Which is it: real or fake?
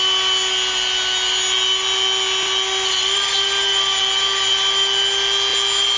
real